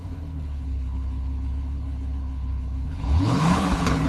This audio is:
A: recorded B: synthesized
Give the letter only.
B